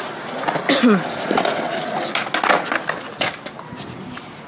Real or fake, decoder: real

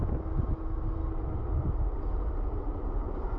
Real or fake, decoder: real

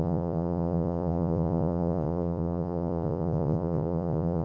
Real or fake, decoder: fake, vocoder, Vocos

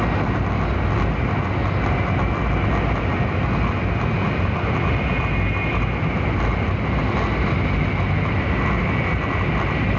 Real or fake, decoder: real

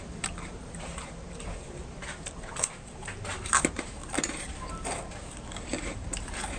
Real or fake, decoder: fake, vocoder, BigVGAN v2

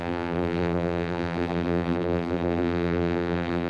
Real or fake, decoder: fake, vocoder, BigVGAN v2